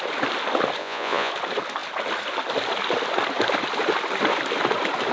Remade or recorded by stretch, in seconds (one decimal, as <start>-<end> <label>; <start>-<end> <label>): 0.0-0.8 recorded; 0.8-1.3 remade; 1.3-5.1 recorded